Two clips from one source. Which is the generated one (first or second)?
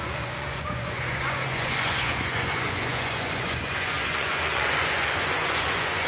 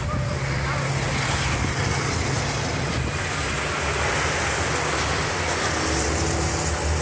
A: first